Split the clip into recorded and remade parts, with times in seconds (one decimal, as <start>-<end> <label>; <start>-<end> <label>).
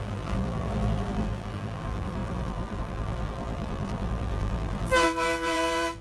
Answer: 0.0-6.0 remade